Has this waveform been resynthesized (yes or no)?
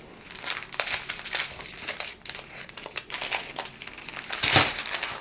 no